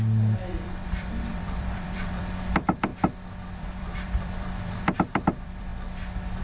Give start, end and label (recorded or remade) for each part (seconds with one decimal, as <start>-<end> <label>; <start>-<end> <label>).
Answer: 0.0-2.9 remade; 2.9-3.8 recorded; 3.8-5.7 remade; 5.7-6.4 recorded